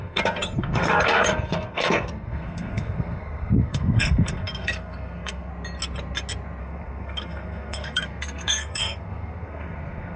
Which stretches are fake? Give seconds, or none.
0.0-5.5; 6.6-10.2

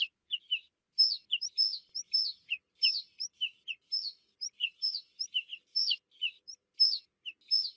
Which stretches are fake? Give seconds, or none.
none

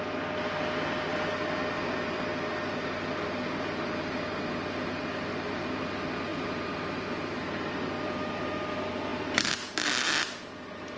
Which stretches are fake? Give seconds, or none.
none

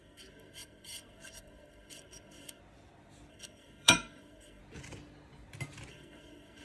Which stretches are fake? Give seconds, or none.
0.0-2.6; 3.3-4.6; 5.9-6.6

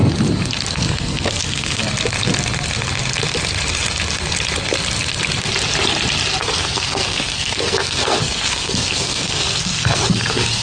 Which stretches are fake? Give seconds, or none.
0.7-1.8; 6.4-10.6